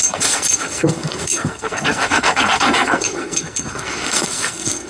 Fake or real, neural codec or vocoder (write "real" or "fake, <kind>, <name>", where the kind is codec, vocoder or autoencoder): fake, codec, SNAC